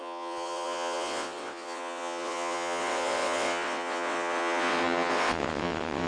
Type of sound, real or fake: fake